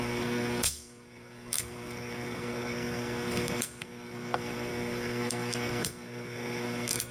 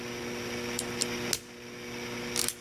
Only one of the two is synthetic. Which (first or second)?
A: first